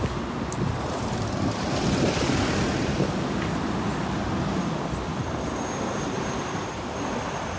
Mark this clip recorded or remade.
recorded